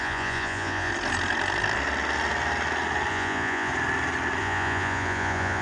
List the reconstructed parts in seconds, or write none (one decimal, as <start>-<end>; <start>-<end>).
0.0-0.9; 3.1-3.7; 4.4-5.6